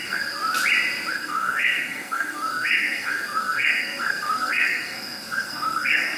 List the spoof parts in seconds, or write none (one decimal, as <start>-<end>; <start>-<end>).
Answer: 0.0-0.4; 1.1-6.2